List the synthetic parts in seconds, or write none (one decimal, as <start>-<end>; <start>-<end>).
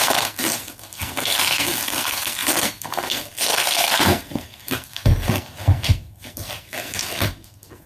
0.0-7.9